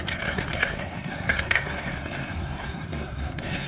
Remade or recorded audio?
remade